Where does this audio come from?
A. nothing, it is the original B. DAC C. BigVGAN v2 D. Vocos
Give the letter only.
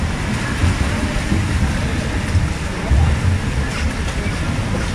A